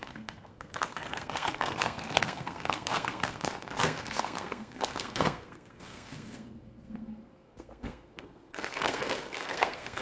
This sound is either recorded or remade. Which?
remade